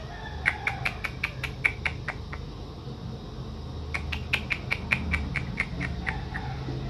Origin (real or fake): real